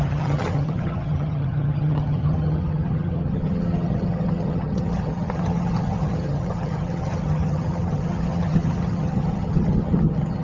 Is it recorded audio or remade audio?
remade